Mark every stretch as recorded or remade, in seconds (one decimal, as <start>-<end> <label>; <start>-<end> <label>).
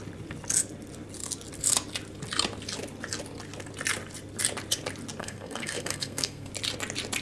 0.0-5.2 recorded; 5.2-6.5 remade; 6.5-7.2 recorded